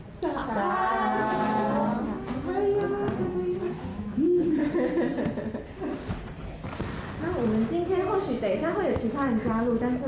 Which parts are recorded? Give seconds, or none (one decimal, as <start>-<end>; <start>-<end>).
0.0-3.9; 4.6-10.1